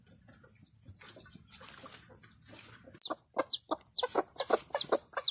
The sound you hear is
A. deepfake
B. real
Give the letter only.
B